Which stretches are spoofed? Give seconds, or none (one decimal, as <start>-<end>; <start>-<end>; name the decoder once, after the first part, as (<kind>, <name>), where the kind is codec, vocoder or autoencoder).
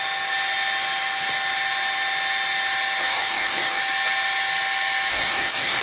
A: 3.0-3.8 (codec, DAC); 5.1-5.8